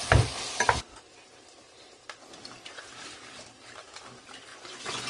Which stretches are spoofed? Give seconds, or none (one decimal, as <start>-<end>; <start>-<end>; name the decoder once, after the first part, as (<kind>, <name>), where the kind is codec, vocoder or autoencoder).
4.5-5.1 (vocoder, Vocos)

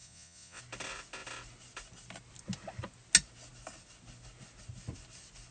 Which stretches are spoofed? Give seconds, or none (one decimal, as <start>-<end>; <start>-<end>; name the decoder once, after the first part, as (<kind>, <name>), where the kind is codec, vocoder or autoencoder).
0.0-0.6 (vocoder, Vocos)